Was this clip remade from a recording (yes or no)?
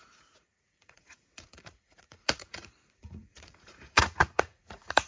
yes